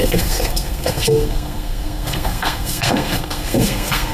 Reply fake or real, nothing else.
fake